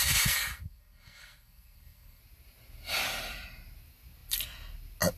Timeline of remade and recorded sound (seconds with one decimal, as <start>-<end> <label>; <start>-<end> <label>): 0.0-2.2 remade; 2.2-5.2 recorded